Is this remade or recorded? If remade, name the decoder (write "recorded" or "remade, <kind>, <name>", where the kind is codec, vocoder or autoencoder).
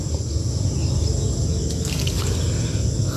recorded